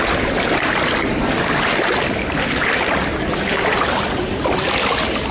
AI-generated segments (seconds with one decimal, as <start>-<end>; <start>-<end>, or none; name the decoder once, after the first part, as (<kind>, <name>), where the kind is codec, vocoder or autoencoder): none